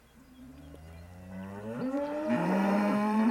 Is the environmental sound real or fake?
fake